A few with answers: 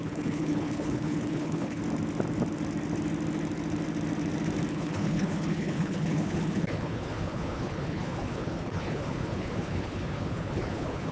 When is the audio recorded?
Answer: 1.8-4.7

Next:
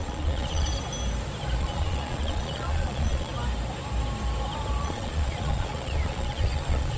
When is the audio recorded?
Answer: 0.7-1.6; 3.3-4.8

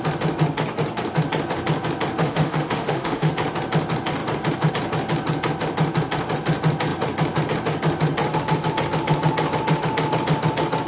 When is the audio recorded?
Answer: 0.0-2.2; 3.3-10.9